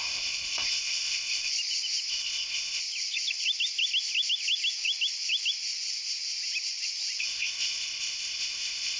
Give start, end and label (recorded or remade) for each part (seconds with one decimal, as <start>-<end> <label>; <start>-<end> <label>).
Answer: 0.0-1.5 remade; 1.5-2.1 recorded; 2.1-2.8 remade; 2.8-7.2 recorded; 7.2-9.0 remade